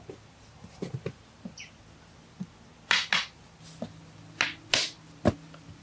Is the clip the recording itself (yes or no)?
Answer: yes